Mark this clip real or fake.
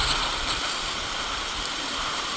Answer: fake